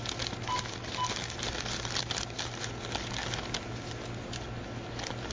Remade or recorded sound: recorded